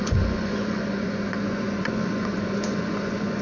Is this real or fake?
fake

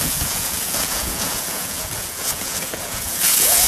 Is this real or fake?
fake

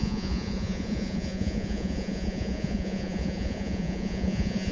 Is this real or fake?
fake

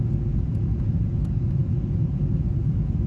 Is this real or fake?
fake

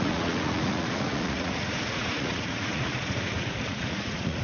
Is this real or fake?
fake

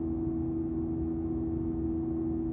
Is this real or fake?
real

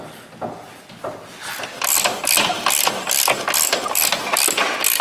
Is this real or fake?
real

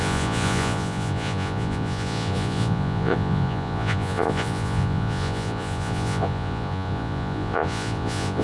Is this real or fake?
fake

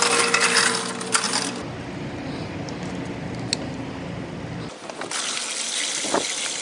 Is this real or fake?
real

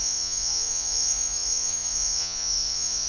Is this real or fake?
fake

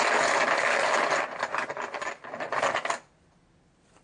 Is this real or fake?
real